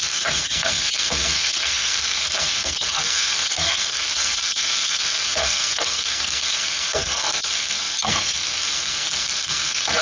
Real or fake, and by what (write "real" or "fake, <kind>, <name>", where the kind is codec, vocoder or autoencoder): fake, codec, SNAC